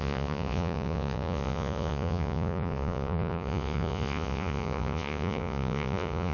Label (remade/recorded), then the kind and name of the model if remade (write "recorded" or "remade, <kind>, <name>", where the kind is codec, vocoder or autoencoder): remade, vocoder, Vocos